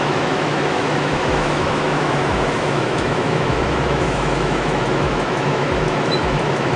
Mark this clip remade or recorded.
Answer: remade